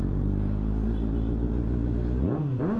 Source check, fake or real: real